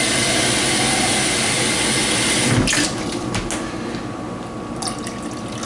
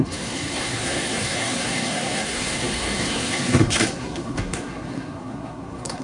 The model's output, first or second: second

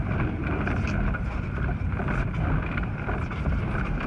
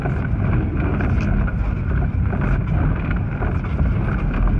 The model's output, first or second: first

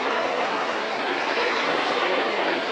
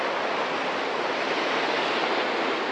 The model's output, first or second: first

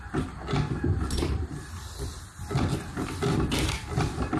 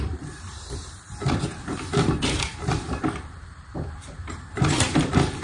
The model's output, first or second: second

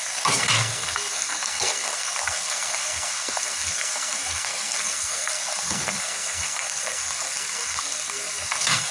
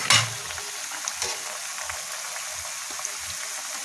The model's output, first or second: first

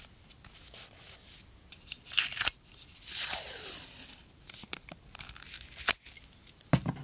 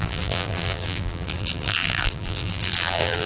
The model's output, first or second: second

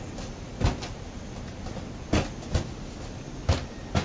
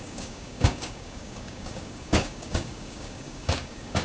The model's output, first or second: second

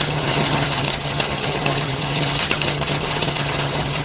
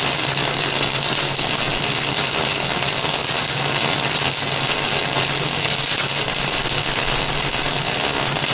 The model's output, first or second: first